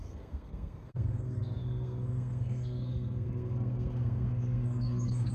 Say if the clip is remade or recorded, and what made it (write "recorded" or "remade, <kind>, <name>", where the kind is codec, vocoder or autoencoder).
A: remade, codec, SNAC